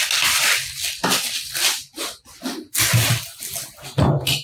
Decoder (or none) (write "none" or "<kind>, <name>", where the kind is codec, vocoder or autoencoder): none